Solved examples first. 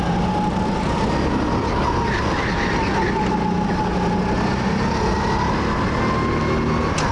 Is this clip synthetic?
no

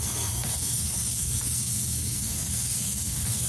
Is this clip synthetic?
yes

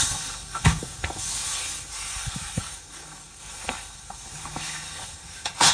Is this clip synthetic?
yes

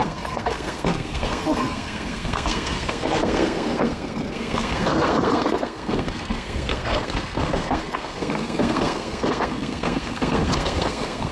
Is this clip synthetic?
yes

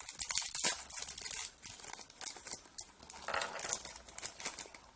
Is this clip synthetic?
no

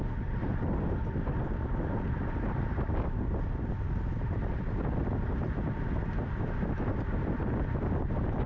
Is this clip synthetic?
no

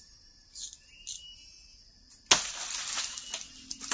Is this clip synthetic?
no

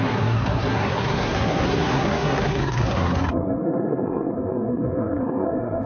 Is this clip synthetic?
yes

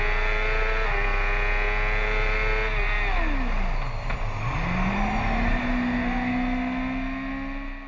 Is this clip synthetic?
no